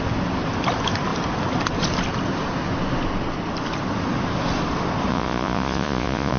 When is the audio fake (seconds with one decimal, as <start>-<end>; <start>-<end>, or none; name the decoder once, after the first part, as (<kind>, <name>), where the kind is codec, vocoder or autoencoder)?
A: 5.1-6.4 (vocoder, Vocos)